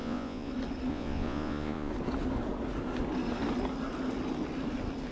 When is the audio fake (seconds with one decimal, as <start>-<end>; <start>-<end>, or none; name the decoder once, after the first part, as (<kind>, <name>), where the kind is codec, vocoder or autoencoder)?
0.0-0.5 (vocoder, Vocos); 0.9-1.9